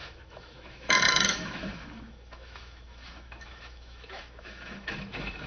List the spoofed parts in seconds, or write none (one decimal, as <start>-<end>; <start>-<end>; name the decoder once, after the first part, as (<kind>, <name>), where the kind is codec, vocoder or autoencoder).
0.0-5.5 (autoencoder, DAC-VAE)